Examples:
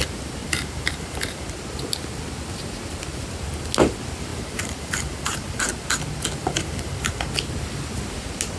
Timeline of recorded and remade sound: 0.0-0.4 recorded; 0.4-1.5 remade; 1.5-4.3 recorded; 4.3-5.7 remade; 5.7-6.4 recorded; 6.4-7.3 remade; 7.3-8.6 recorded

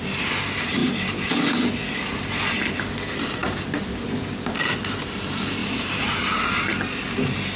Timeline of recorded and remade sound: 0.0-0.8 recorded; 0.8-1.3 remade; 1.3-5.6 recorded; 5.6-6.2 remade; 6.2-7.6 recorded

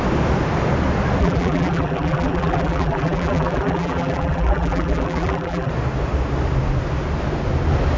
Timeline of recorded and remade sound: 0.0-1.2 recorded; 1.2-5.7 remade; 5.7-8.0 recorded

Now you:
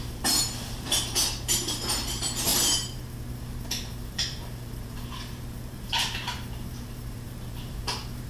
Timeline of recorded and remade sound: 0.0-8.3 remade